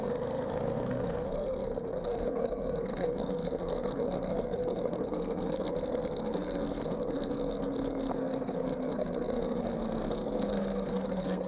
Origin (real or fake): fake